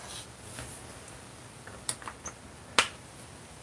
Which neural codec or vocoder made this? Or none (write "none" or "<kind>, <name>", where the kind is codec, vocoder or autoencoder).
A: none